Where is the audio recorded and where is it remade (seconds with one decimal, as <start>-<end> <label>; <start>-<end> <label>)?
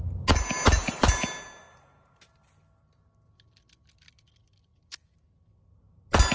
0.0-6.3 recorded